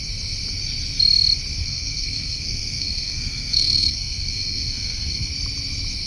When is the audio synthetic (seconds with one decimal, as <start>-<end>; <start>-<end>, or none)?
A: 1.6-5.3

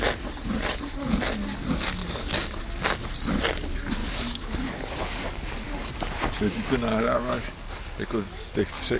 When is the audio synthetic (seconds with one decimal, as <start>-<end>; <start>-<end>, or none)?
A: 2.0-2.6; 4.0-5.9; 6.9-8.5

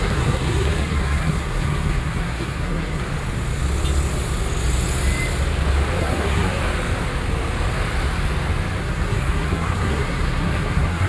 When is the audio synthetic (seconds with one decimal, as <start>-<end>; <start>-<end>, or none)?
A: 0.0-3.0; 6.0-6.6; 8.8-11.1

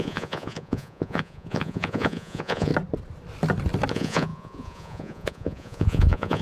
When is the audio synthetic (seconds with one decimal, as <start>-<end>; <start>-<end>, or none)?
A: 0.0-2.7; 3.9-6.4

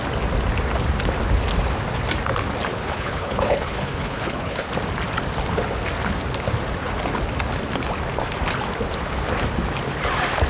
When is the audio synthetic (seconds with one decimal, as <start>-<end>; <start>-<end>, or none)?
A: 2.7-4.7

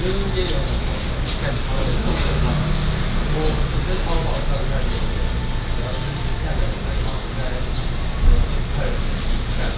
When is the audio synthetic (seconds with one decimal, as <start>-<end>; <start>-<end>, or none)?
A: 1.8-3.0

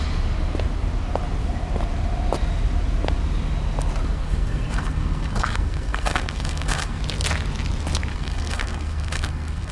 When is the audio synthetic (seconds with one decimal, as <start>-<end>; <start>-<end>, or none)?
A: 4.0-7.0; 8.1-9.7

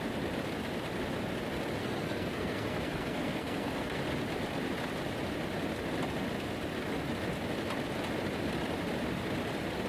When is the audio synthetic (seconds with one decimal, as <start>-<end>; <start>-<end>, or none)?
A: 1.8-4.0